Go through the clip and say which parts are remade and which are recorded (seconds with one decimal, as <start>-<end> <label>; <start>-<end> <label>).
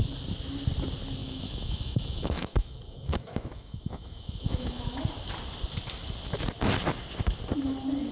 0.0-1.2 recorded; 1.2-5.0 remade; 5.0-8.1 recorded